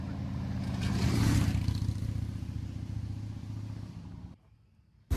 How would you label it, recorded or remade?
recorded